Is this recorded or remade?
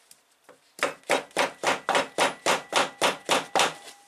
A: recorded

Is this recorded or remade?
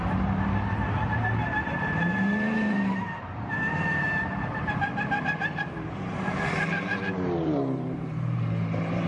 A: remade